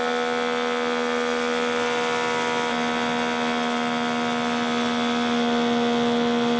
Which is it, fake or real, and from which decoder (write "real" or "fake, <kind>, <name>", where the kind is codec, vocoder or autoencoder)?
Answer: real